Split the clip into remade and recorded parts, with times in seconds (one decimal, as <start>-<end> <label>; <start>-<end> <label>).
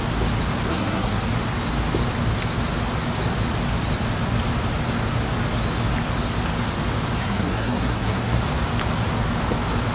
0.0-0.7 recorded; 0.7-1.2 remade; 1.2-7.2 recorded; 7.2-8.4 remade; 8.4-9.9 recorded